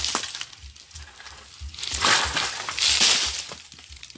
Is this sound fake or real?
real